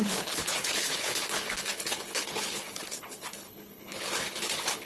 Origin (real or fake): fake